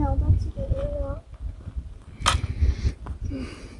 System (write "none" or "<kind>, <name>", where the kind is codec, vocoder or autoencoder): none